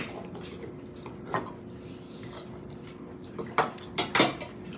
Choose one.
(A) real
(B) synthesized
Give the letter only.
A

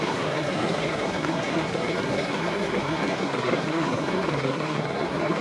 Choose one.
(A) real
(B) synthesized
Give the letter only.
B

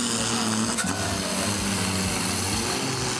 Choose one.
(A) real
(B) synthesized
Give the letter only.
A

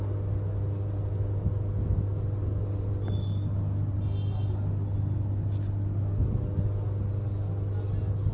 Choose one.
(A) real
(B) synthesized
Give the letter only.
A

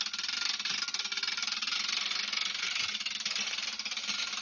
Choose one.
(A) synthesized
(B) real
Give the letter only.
B